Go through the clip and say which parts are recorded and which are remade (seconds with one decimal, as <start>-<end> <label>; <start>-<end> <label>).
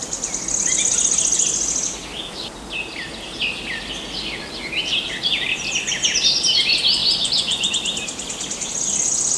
0.0-7.0 recorded; 7.0-7.7 remade; 7.7-9.4 recorded